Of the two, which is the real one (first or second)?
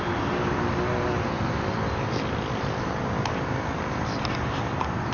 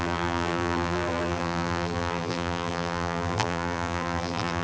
first